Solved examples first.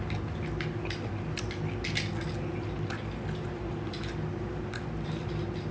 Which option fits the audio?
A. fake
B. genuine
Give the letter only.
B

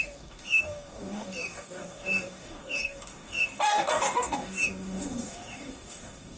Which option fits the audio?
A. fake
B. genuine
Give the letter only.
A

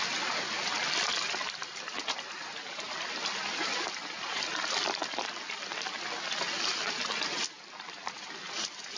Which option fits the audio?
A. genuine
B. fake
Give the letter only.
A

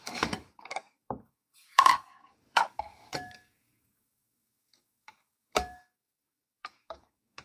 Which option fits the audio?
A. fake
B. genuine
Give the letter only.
A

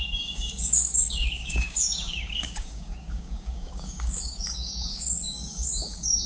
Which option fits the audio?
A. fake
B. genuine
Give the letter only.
A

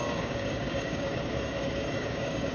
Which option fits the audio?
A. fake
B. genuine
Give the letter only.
A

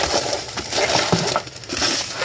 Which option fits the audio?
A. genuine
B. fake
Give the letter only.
A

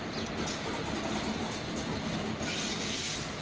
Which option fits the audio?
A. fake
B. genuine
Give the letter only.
B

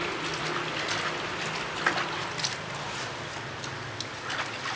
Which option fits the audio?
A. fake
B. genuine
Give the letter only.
B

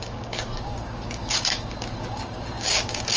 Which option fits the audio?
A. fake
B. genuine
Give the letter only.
A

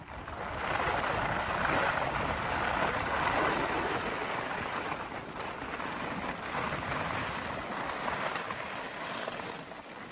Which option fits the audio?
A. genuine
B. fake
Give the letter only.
A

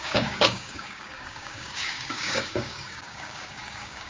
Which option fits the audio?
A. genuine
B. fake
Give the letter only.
B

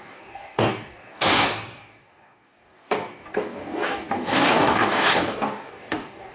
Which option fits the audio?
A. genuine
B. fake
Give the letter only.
B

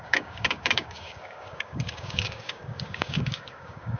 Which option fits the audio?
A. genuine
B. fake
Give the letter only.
B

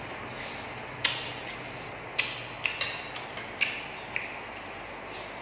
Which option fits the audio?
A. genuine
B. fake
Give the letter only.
A